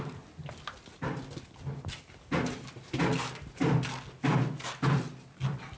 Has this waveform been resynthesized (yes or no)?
no